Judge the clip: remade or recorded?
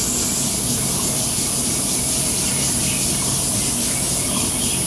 recorded